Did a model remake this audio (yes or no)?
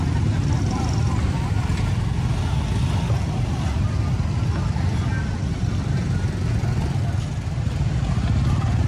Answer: no